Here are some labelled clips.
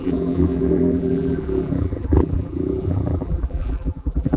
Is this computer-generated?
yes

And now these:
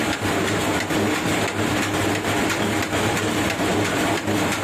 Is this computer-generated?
no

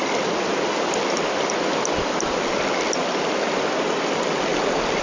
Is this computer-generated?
no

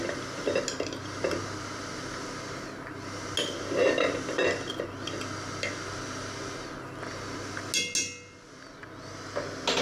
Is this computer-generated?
no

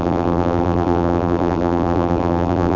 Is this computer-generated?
yes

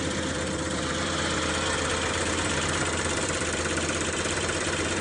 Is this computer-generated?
yes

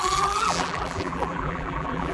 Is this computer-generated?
yes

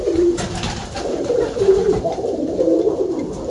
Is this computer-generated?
yes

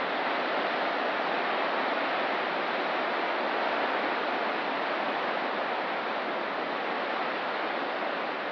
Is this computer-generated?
no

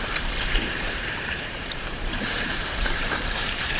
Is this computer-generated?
yes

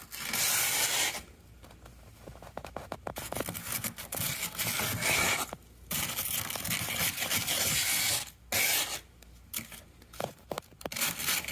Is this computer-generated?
no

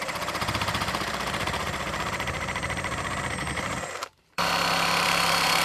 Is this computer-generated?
yes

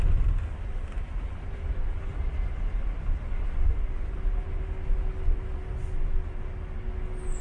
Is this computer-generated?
no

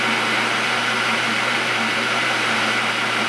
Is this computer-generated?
yes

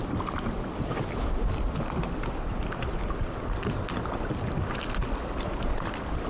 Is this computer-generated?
no